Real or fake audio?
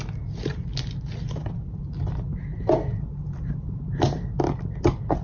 real